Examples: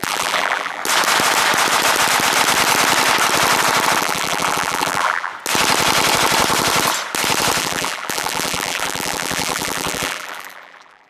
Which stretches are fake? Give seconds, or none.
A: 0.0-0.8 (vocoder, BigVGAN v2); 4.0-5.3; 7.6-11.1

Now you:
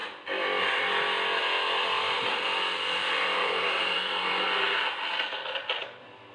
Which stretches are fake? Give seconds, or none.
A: 3.0-4.0 (vocoder, BigVGAN v2)